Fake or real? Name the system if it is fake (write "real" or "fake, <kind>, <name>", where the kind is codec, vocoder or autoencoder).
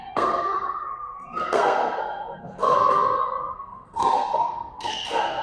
fake, codec, SNAC